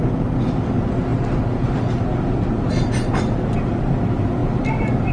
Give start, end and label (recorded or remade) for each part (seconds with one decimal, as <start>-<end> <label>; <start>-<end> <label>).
0.0-5.1 recorded